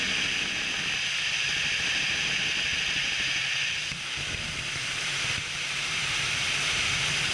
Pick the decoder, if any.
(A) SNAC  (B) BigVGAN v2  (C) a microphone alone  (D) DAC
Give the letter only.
C